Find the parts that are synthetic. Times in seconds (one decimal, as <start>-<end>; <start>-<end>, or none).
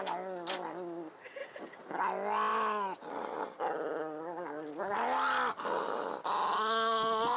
1.4-2.0